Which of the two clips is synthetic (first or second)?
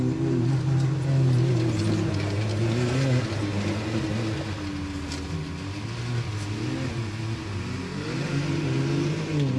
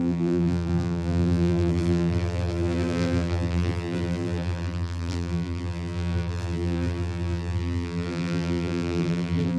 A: second